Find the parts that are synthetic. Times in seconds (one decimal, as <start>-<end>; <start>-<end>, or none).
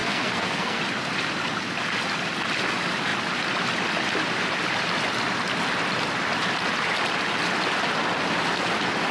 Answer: 0.0-0.8